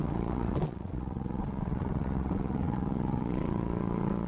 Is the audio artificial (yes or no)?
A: yes